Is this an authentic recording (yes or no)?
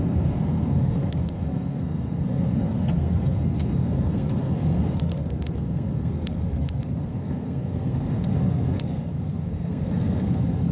no